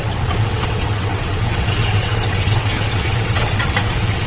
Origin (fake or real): fake